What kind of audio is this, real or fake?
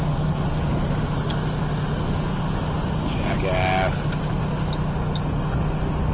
real